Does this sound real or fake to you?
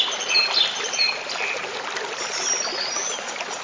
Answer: real